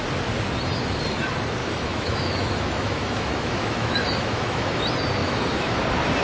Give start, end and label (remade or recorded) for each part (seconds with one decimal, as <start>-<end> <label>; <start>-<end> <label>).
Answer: 0.0-1.6 recorded; 1.6-4.8 remade; 4.8-5.2 recorded; 5.2-5.8 remade; 5.8-6.2 recorded